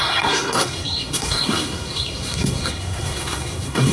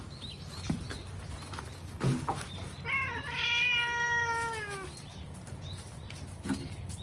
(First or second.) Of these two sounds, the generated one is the first